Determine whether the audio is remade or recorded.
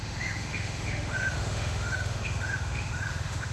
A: remade